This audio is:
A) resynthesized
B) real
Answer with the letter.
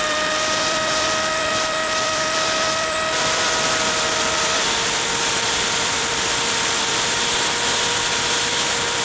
A